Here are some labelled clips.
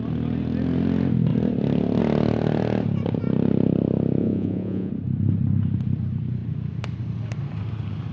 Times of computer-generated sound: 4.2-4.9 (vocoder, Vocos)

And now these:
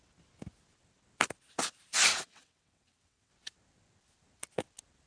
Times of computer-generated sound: 2.1-3.3 (vocoder, WaveNeXt)

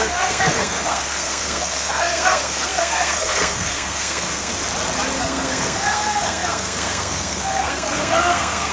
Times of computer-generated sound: 0.0-4.5 (codec, SNAC); 5.2-8.7

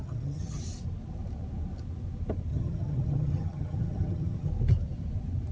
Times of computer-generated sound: 0.0-0.6 (vocoder, HiFi-GAN); 2.5-4.5

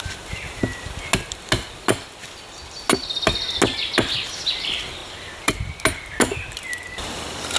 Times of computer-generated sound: none

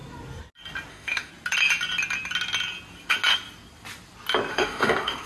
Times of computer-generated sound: 0.9-1.3 (autoencoder, DAC-VAE); 4.5-5.3

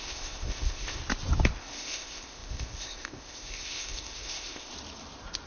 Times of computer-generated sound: 0.0-1.0 (codec, ZipCodec); 1.6-4.7